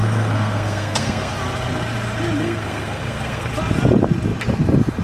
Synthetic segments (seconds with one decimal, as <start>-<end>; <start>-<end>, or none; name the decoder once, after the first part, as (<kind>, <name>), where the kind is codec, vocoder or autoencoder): 0.0-1.3 (codec, SNAC); 2.4-3.5